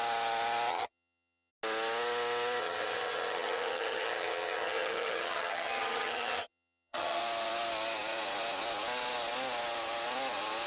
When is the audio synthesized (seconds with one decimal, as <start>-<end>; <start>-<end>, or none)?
0.7-1.5; 2.6-7.2